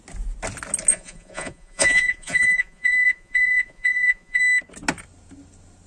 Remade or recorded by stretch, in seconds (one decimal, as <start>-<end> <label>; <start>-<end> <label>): 0.0-0.9 recorded; 0.9-4.4 remade; 4.4-5.9 recorded

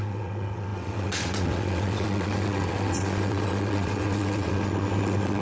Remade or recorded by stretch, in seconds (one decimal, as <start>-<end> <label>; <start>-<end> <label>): 0.0-5.4 remade

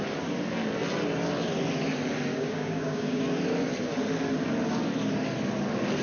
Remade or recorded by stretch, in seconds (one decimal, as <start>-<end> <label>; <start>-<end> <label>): 0.0-2.3 recorded; 2.3-3.2 remade; 3.2-6.0 recorded

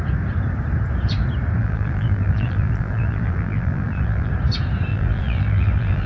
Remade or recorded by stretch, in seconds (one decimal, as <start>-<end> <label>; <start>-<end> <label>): 0.0-1.6 recorded; 1.6-4.3 remade; 4.3-4.9 recorded; 4.9-6.1 remade

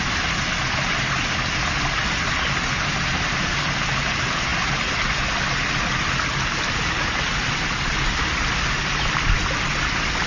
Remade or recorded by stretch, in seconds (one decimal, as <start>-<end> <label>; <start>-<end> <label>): 0.0-10.3 recorded